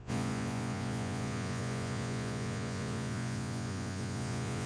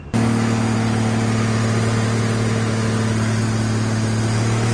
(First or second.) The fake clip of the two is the first